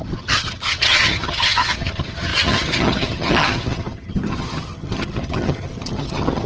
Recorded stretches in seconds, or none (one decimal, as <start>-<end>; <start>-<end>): none